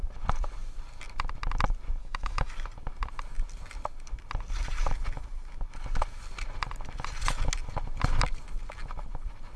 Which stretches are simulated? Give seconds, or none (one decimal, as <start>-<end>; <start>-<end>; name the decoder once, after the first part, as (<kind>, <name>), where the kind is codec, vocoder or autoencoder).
2.0-2.5 (autoencoder, DAC-VAE)